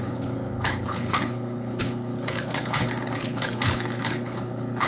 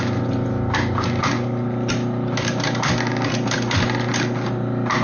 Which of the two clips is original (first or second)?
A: second